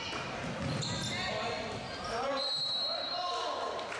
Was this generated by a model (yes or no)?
no